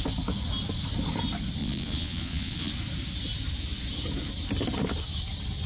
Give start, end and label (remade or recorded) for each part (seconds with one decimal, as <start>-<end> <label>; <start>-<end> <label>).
0.0-1.6 recorded; 1.6-2.7 remade; 2.7-5.7 recorded